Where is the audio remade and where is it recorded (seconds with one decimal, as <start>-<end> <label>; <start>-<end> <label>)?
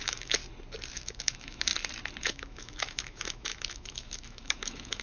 0.0-0.4 remade; 0.4-0.9 recorded; 0.9-1.7 remade; 1.7-2.2 recorded; 2.2-5.0 remade